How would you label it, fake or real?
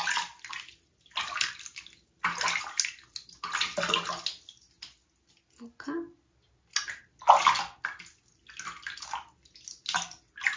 real